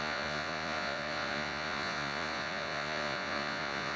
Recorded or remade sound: remade